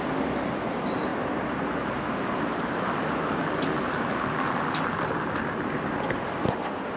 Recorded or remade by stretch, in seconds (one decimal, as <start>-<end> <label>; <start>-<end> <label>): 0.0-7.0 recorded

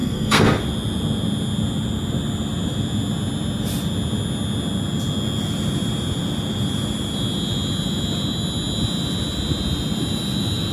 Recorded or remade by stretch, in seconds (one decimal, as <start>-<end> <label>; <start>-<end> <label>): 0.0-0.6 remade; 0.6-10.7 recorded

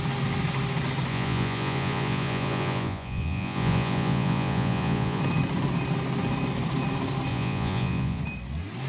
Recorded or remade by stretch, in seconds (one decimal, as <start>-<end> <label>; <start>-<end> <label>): 0.0-1.1 recorded; 1.1-5.2 remade; 5.2-7.3 recorded; 7.3-8.2 remade; 8.2-8.9 recorded